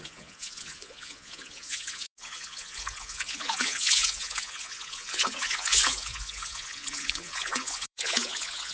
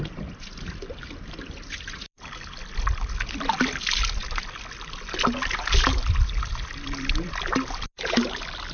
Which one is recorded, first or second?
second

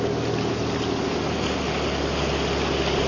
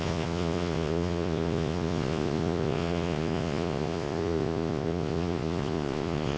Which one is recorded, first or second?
first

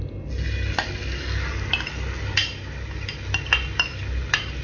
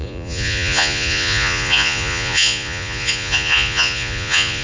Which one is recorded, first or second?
first